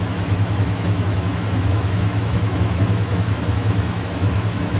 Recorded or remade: remade